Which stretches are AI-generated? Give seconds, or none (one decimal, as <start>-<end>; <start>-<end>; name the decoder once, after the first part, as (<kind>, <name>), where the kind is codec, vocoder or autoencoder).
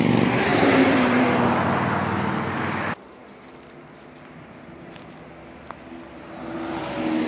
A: 0.5-1.2 (vocoder, BigVGAN v2)